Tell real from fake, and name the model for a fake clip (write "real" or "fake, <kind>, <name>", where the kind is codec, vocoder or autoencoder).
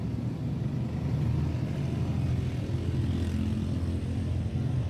real